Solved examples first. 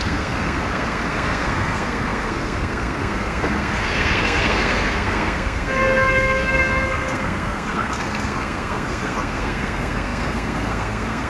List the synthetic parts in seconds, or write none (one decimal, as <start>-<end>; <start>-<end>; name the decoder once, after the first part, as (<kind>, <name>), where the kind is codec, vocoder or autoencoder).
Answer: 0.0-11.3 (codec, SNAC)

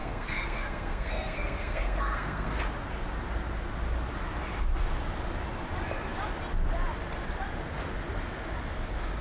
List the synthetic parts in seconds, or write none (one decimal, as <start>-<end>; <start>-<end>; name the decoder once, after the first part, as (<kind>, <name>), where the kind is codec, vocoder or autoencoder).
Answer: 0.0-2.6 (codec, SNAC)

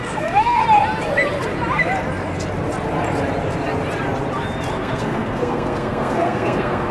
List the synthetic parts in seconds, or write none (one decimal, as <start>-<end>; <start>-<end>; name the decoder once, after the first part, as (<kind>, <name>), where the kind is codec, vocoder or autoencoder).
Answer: 0.0-0.6 (codec, SNAC); 4.7-6.9